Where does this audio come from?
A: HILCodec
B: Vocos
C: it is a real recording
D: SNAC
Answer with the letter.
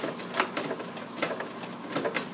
C